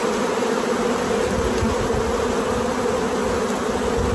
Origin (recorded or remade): recorded